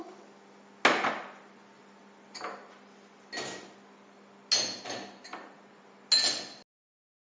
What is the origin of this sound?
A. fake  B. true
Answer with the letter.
B